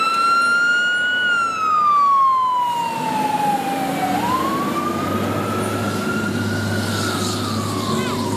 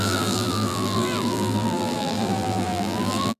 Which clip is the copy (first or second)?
second